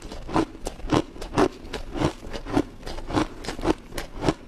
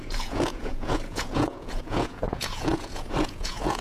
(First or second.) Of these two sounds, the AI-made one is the second